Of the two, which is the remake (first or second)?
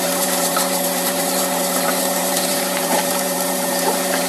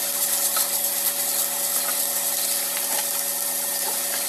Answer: first